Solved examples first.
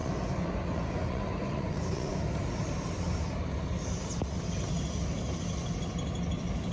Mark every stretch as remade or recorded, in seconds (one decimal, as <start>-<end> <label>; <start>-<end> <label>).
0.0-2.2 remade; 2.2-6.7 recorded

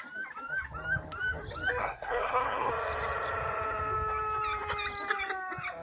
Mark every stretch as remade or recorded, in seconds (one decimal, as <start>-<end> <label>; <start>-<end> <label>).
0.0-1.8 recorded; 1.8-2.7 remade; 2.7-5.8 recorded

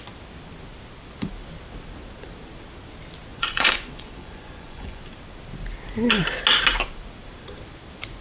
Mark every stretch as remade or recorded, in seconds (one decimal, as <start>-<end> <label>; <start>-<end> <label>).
0.0-3.3 recorded; 3.3-5.0 remade; 5.0-8.2 recorded

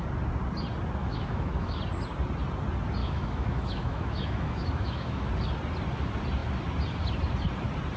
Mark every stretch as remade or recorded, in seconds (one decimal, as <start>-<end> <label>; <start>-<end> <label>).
0.0-1.0 recorded; 1.0-1.8 remade; 1.8-3.0 recorded; 3.0-5.3 remade; 5.3-8.0 recorded

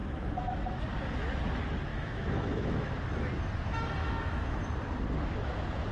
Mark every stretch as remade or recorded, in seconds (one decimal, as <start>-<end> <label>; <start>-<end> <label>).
0.0-0.8 remade; 0.8-1.9 recorded; 1.9-2.9 remade; 2.9-4.0 recorded; 4.0-4.6 remade; 4.6-5.9 recorded